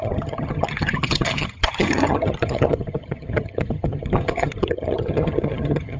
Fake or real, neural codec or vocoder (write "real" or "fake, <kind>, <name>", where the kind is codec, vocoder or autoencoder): fake, vocoder, HiFi-GAN